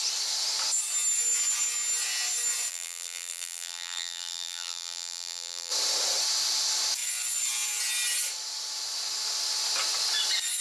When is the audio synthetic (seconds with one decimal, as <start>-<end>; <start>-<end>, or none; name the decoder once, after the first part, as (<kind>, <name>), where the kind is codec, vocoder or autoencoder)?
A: 2.7-5.7 (vocoder, BigVGAN v2)

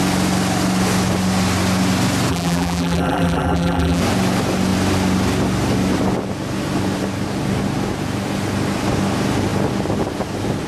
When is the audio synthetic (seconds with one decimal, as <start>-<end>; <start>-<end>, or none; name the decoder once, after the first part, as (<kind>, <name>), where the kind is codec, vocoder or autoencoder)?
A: 2.3-4.0 (vocoder, BigVGAN v2)

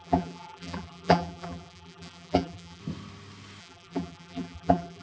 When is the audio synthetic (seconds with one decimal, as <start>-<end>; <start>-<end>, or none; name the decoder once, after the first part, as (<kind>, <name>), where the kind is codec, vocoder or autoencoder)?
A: 0.0-2.8 (vocoder, BigVGAN v2); 3.6-5.0

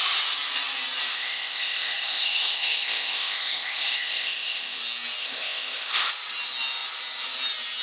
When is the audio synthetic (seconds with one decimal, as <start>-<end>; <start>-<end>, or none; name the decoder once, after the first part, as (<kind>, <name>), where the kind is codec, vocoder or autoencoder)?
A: 1.1-4.8 (codec, ZipCodec); 5.2-6.1

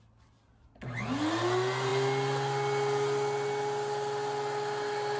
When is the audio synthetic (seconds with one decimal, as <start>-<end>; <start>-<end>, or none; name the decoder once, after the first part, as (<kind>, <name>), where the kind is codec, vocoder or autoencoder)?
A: none